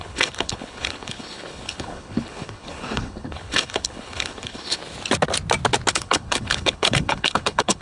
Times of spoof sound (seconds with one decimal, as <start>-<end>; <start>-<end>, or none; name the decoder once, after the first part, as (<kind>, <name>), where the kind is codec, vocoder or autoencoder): 0.0-4.8 (codec, HILCodec); 5.9-7.8